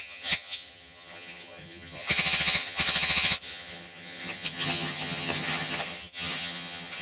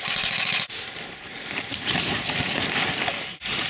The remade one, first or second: first